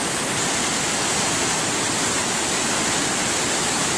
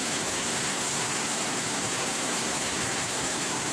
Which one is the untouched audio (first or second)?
first